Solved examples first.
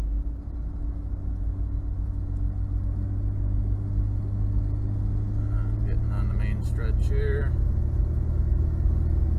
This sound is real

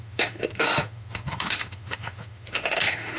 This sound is fake